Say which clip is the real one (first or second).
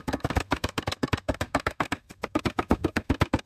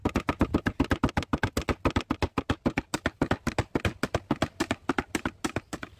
second